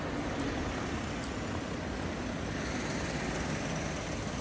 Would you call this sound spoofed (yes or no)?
no